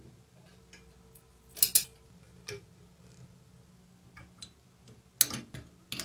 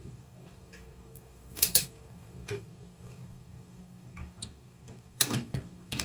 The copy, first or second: second